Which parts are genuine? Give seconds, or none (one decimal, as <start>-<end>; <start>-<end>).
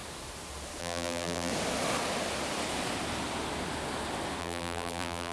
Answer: 0.0-0.8; 1.5-4.4